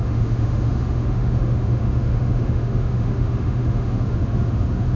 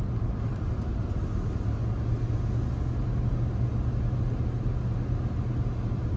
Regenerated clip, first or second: first